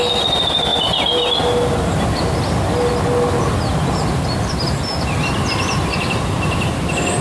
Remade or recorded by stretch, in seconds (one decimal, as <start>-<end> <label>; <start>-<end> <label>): 0.0-7.2 recorded